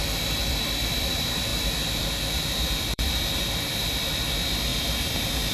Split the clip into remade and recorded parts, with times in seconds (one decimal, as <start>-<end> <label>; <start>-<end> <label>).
0.0-5.5 remade

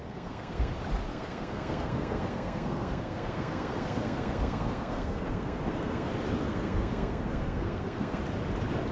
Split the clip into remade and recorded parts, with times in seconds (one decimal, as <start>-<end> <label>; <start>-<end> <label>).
0.0-0.7 remade; 0.7-1.1 recorded; 1.1-6.1 remade; 6.1-6.5 recorded; 6.5-8.2 remade; 8.2-8.9 recorded

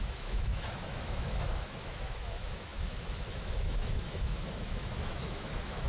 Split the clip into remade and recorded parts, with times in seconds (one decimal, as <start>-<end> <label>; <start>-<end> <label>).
0.0-5.9 remade

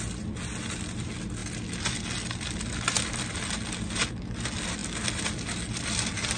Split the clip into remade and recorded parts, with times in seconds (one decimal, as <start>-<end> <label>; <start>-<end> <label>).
0.0-6.4 recorded

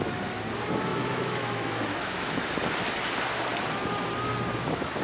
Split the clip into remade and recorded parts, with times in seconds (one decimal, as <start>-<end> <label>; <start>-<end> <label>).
0.0-0.9 recorded; 0.9-2.5 remade; 2.5-5.0 recorded

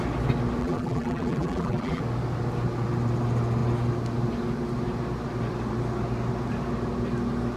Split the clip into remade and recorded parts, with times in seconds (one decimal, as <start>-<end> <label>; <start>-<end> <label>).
0.0-0.6 recorded; 0.6-2.0 remade; 2.0-7.6 recorded

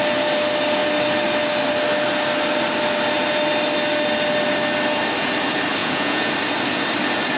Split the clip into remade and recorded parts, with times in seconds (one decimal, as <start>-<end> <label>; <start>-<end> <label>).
0.0-5.8 recorded; 5.8-6.3 remade; 6.3-7.4 recorded

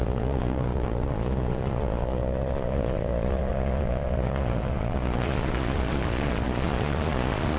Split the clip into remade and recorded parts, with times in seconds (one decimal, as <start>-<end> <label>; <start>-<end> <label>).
0.0-7.6 remade